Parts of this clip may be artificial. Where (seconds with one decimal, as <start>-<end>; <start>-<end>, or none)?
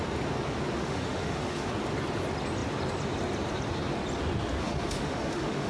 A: 0.8-1.7; 4.6-5.7